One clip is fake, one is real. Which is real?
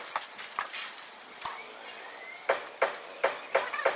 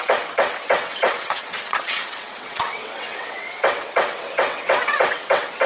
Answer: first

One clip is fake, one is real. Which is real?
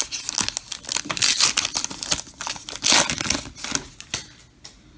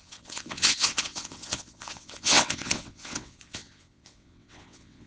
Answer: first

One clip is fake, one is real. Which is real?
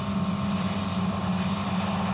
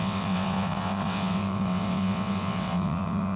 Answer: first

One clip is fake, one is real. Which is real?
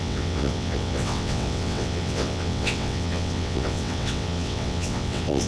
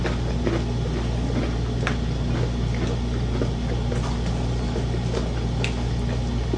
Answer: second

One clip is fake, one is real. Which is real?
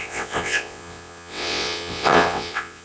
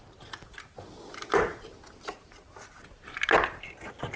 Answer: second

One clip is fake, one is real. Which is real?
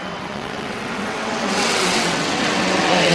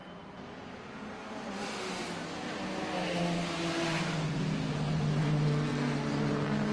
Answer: second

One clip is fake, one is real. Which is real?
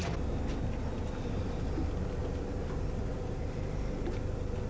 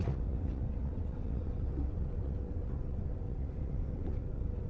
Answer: first